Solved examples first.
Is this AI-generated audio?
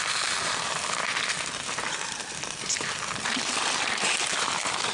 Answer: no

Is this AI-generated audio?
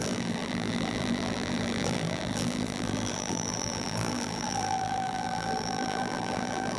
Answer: yes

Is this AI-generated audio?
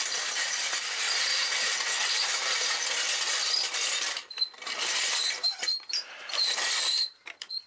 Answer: yes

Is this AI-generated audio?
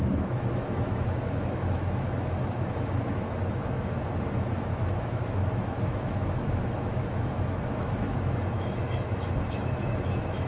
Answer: yes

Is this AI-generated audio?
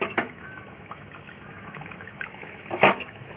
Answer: yes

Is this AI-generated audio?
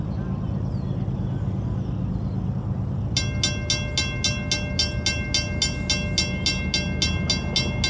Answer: no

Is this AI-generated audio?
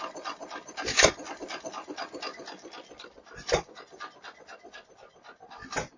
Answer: no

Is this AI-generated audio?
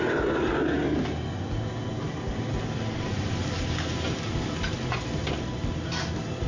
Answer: no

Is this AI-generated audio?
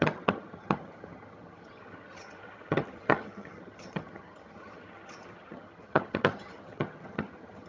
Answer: yes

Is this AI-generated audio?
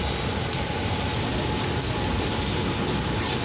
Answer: no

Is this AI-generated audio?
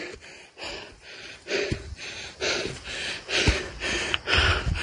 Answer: no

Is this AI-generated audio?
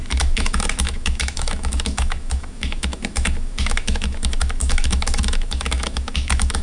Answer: yes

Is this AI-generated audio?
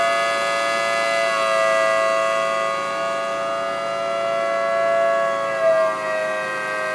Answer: no